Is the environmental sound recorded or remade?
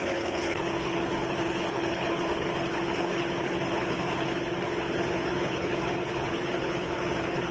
remade